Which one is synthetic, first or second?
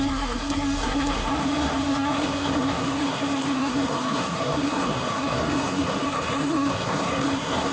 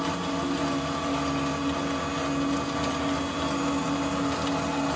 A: first